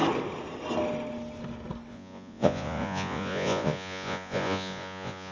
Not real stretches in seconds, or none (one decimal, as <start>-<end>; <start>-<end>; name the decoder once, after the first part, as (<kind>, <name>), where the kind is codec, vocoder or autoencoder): 1.9-5.3 (vocoder, Vocos)

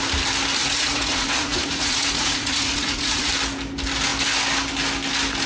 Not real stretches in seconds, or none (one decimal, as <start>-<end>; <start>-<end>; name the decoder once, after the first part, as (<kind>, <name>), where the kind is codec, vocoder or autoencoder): 0.6-3.3 (vocoder, Vocos)

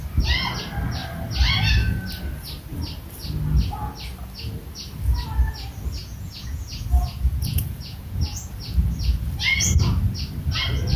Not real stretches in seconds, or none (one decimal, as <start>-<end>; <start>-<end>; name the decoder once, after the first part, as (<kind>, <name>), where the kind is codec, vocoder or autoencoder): 6.0-8.5 (vocoder, Vocos)